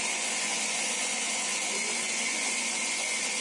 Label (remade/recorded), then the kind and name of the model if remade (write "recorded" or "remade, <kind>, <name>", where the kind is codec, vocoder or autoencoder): remade, vocoder, Vocos